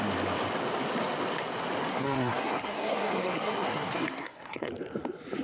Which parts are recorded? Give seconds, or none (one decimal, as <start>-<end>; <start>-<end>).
0.0-1.9; 4.7-5.4

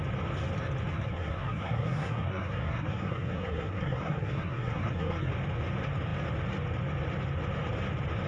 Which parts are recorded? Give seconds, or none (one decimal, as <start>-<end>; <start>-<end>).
0.0-0.9; 5.3-8.3